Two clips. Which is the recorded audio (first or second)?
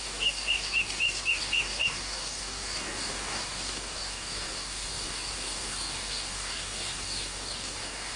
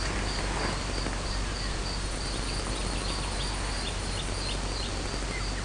second